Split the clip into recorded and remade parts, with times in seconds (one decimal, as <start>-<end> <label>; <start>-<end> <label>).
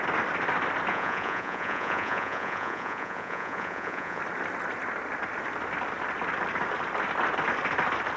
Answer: 0.0-0.9 recorded; 0.9-4.2 remade; 4.2-8.2 recorded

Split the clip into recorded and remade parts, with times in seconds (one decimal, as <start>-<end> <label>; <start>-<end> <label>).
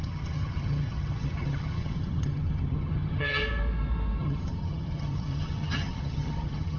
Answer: 0.0-3.4 remade; 3.4-4.2 recorded; 4.2-6.8 remade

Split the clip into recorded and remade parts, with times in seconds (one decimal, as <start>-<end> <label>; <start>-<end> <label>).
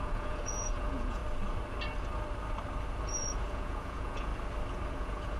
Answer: 0.0-1.2 remade; 1.2-3.0 recorded; 3.0-4.3 remade; 4.3-4.9 recorded; 4.9-5.4 remade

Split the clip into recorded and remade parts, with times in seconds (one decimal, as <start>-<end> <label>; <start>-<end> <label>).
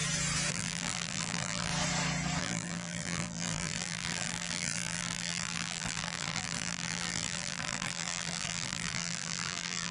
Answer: 0.0-0.5 recorded; 0.5-1.7 remade; 1.7-2.4 recorded; 2.4-9.9 remade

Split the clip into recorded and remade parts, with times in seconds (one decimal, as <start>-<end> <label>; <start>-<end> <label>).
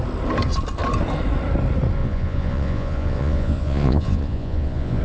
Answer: 0.0-2.0 recorded; 2.0-5.0 remade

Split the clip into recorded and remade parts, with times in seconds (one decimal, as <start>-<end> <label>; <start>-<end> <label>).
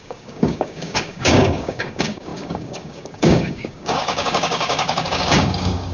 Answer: 0.0-5.9 remade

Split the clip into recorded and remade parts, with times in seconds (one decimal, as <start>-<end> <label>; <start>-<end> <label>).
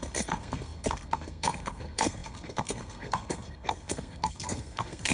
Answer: 0.0-5.1 remade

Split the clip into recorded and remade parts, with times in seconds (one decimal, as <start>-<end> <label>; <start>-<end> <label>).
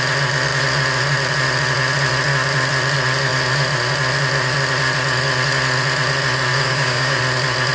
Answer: 0.0-6.5 recorded; 6.5-7.2 remade; 7.2-7.7 recorded